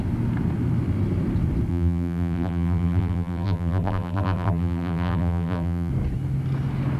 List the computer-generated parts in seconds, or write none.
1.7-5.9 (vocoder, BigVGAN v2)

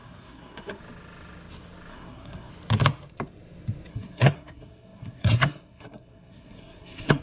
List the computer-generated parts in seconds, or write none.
0.0-0.8 (codec, SNAC); 1.9-2.5; 3.9-7.2

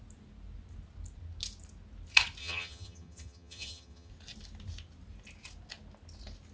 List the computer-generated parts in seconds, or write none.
2.4-4.1 (vocoder, HiFi-GAN)

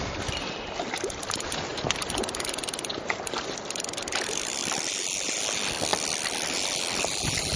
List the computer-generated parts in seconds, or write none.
4.6-5.4 (vocoder, BigVGAN v2); 5.9-7.6

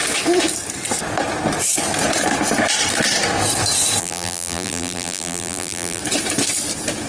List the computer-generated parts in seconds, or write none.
4.0-6.0 (vocoder, BigVGAN v2)

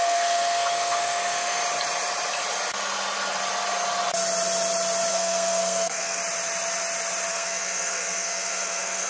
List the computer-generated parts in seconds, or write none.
0.0-1.6 (codec, SNAC); 5.1-6.2; 7.3-9.1

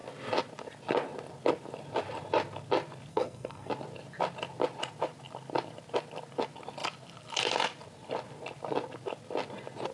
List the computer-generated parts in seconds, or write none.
3.1-3.7 (codec, SNAC)